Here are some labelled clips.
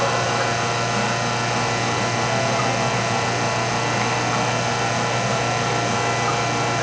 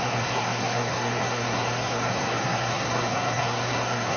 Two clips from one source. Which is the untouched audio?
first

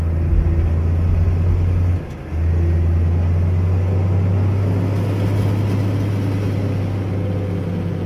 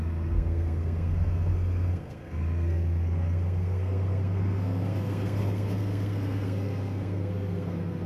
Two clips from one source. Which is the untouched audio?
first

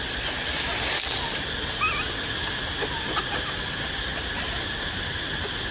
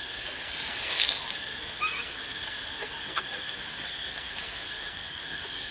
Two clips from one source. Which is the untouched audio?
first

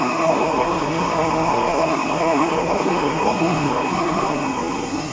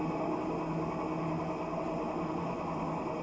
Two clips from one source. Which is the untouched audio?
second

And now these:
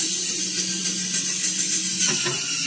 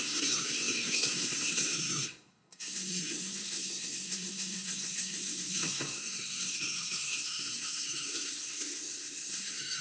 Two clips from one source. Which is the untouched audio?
first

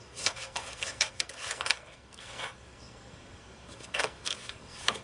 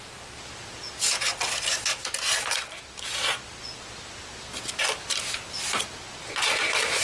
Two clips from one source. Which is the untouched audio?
second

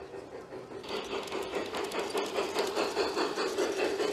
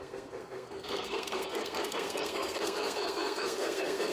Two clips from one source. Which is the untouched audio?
first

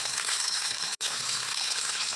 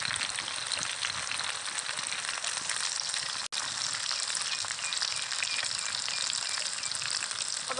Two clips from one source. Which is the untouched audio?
second